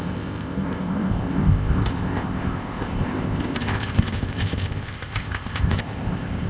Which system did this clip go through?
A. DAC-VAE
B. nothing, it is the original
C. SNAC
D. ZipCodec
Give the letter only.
D